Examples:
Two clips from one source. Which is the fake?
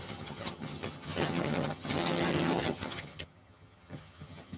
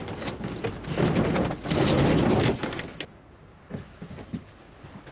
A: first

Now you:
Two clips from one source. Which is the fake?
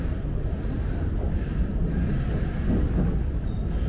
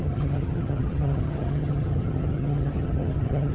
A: second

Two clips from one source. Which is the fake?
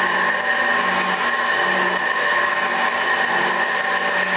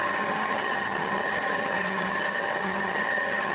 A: second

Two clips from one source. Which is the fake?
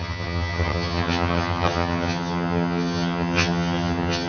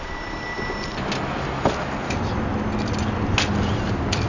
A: first